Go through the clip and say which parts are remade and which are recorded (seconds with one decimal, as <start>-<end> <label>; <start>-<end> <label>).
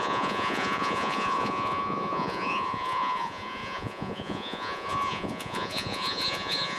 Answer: 0.0-6.8 remade